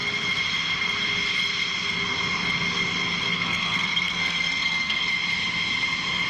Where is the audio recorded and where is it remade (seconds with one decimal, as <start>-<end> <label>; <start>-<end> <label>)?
0.0-3.3 recorded; 3.3-5.1 remade; 5.1-6.3 recorded

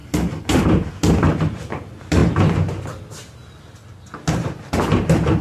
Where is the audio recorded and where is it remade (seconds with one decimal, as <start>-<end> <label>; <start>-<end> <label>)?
0.0-5.4 recorded

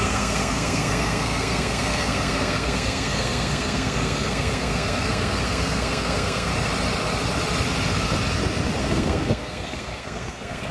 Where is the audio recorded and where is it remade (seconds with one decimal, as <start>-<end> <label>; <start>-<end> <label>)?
0.0-6.5 remade; 6.5-8.8 recorded; 8.8-10.7 remade

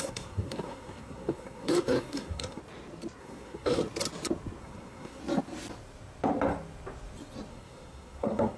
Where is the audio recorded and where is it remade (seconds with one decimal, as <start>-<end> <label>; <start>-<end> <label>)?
0.0-2.6 remade; 2.6-3.2 recorded; 3.2-3.8 remade; 3.8-4.6 recorded; 4.6-5.2 remade; 5.2-7.5 recorded; 7.5-8.6 remade

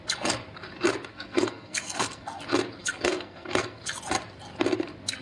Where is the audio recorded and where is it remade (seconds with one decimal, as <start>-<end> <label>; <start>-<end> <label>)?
0.0-1.1 recorded; 1.1-2.4 remade; 2.4-2.8 recorded; 2.8-3.8 remade; 3.8-5.2 recorded